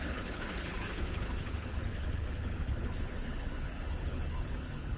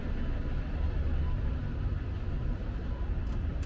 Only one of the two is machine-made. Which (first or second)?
first